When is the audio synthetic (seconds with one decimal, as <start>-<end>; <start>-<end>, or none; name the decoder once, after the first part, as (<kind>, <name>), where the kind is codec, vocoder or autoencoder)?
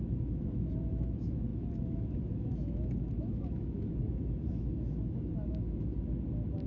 0.0-5.9 (autoencoder, DAC-VAE)